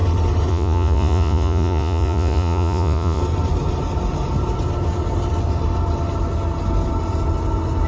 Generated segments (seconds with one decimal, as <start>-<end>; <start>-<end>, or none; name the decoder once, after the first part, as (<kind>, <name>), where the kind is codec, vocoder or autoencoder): 0.5-3.2 (vocoder, Vocos)